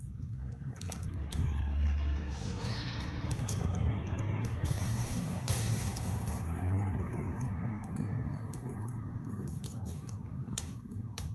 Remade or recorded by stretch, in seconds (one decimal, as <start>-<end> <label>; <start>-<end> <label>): 0.0-11.3 remade